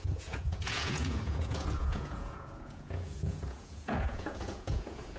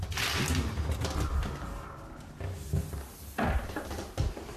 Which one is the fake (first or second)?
first